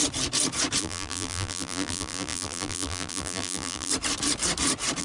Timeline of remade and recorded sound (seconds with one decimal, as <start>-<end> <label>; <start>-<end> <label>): 0.0-0.8 recorded; 0.8-3.9 remade; 3.9-5.0 recorded

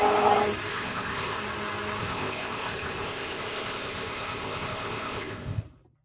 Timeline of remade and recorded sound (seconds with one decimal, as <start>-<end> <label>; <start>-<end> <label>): 0.0-0.7 recorded; 0.7-1.4 remade; 1.4-2.0 recorded; 2.0-5.6 remade; 5.6-6.0 recorded

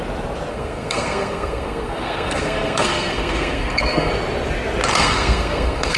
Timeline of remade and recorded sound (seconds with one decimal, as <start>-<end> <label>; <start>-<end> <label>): 0.0-0.5 recorded; 0.5-4.1 remade; 4.1-4.9 recorded; 4.9-6.0 remade

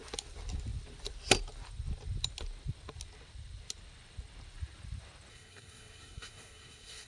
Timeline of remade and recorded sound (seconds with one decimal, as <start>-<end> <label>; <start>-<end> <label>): 0.0-5.3 recorded; 5.3-7.1 remade

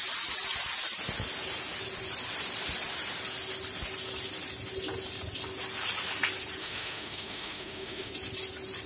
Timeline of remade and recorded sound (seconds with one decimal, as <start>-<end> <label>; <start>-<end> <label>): 0.0-6.6 recorded; 6.6-8.1 remade; 8.1-8.9 recorded